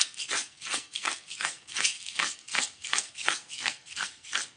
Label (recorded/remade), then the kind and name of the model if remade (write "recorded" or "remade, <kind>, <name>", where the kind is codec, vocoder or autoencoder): remade, codec, SNAC